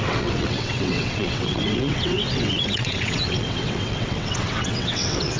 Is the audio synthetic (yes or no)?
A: yes